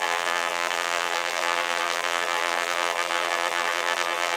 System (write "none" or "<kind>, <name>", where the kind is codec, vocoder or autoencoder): vocoder, BigVGAN v2